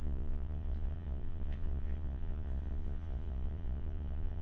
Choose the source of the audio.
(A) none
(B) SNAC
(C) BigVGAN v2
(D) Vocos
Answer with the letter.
D